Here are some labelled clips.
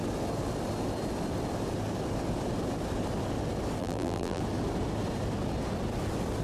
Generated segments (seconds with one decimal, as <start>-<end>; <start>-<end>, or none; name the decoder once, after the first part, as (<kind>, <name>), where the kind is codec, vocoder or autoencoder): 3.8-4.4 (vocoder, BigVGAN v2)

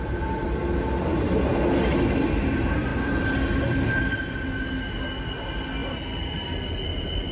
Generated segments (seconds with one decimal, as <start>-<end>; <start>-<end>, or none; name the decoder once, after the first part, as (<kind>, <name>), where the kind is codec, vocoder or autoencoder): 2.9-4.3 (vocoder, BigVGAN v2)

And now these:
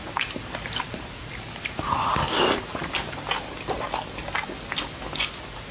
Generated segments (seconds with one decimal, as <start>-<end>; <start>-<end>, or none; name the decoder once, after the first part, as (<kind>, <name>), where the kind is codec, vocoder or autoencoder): 0.0-3.4 (vocoder, BigVGAN v2)

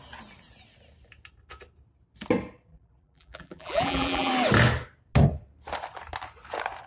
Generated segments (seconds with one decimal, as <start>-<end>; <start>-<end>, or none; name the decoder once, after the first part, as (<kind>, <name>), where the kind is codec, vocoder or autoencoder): 2.7-4.3 (vocoder, BigVGAN v2)

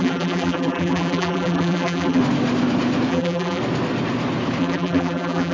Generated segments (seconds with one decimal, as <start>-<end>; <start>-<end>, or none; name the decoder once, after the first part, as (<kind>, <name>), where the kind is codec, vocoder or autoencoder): 0.0-2.2 (vocoder, BigVGAN v2); 3.1-3.6; 4.6-5.5